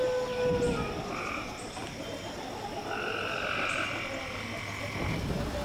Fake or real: real